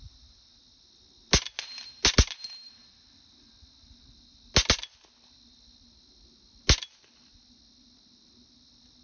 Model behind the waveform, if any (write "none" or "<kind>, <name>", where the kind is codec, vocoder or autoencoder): none